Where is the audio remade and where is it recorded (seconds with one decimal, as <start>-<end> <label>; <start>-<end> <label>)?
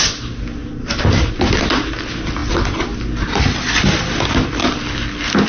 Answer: 0.0-5.5 recorded